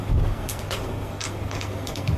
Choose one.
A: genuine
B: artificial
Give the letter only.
B